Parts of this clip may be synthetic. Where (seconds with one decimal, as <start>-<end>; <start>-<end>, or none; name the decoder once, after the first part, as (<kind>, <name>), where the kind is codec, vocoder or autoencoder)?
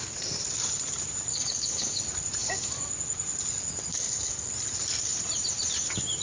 1.3-2.0 (codec, DAC); 2.4-2.9; 3.9-4.5